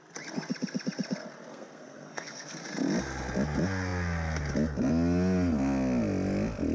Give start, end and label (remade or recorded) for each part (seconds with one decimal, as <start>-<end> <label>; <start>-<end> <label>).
0.0-1.5 recorded; 1.5-2.6 remade; 2.6-6.7 recorded